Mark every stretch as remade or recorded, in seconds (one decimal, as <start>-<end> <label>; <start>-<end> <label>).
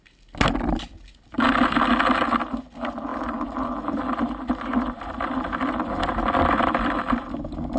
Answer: 0.0-7.8 recorded